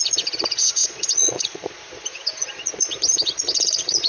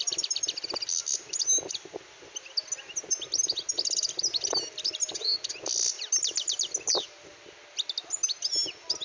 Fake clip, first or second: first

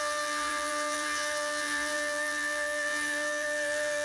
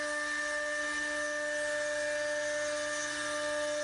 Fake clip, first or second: first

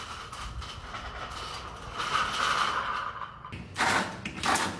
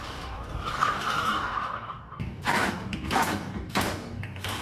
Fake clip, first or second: second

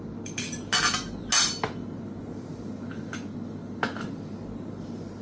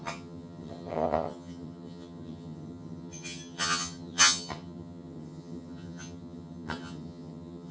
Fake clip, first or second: second